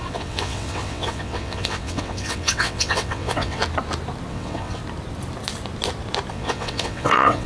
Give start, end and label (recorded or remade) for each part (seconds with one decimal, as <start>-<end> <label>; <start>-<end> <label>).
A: 0.0-3.6 remade; 3.6-4.3 recorded; 4.3-4.8 remade; 4.8-6.3 recorded; 6.3-7.5 remade